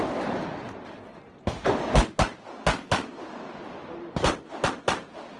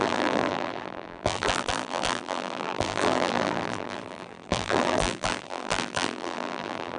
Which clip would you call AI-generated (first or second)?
second